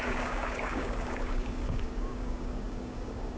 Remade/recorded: remade